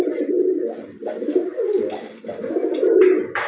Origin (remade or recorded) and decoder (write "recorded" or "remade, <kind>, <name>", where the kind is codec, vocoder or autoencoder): recorded